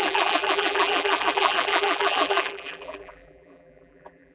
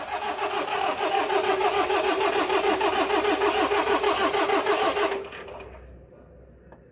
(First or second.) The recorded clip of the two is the second